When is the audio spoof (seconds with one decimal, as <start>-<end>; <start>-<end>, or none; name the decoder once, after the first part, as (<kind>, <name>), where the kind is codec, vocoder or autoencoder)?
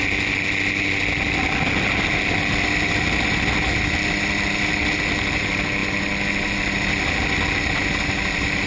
none